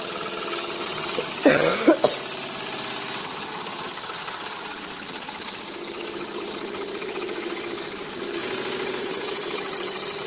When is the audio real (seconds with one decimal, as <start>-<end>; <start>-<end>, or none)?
1.7-3.2; 8.4-9.0